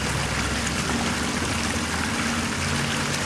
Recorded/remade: recorded